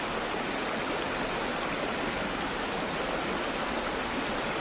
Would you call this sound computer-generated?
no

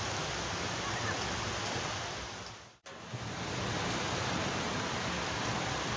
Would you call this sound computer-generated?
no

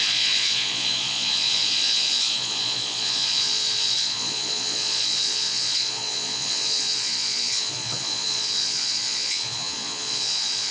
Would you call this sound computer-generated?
yes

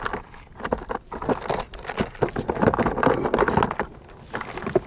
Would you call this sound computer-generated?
no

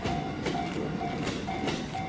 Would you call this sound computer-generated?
no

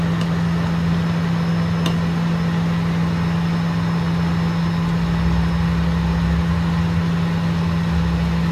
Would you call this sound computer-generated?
no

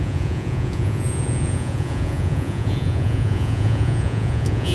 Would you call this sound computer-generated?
yes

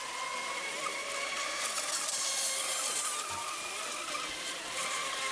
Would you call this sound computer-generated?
no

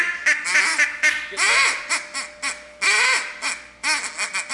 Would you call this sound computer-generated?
no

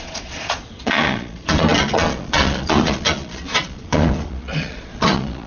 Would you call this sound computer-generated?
yes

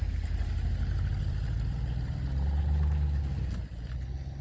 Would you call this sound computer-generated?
no